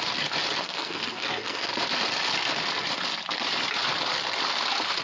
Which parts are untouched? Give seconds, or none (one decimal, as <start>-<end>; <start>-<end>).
0.0-0.6; 1.7-5.0